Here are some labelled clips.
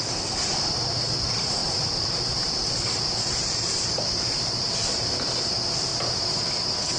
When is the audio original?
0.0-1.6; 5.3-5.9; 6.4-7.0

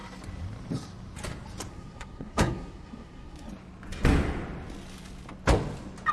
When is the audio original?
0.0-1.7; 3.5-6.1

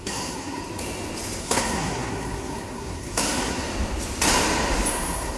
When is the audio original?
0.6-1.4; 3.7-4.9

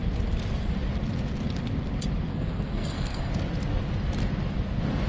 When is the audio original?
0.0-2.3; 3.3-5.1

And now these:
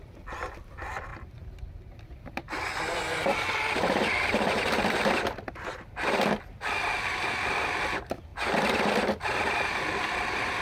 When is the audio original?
0.0-1.1; 6.4-10.6